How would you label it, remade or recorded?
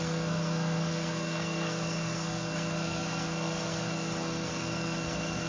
remade